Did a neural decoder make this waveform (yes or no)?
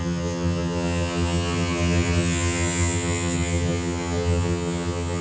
yes